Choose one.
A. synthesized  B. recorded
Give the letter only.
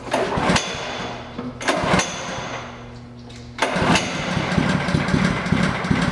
B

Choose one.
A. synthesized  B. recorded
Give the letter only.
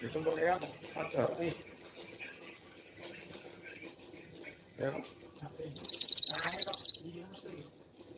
A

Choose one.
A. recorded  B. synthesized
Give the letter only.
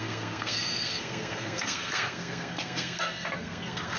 B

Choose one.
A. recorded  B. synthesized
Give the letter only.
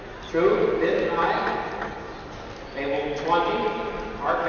A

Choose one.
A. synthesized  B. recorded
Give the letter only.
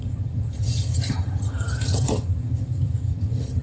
A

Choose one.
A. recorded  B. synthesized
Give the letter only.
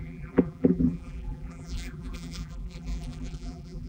B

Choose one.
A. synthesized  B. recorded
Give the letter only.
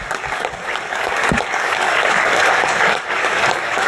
A